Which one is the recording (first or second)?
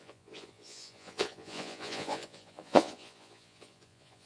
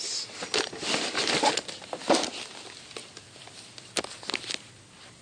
second